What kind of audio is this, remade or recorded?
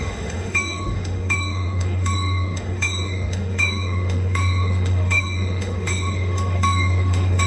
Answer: remade